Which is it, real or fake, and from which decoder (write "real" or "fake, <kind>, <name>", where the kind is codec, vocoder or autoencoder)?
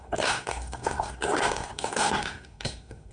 fake, codec, SNAC